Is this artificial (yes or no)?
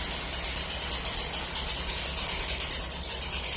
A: no